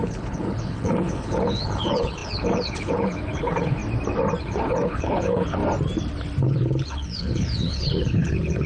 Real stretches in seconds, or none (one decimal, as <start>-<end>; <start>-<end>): 3.8-4.4; 5.6-6.4